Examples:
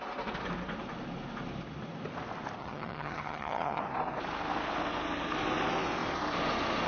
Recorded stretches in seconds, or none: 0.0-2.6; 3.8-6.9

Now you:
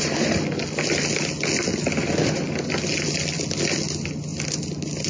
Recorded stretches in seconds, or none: 0.0-5.1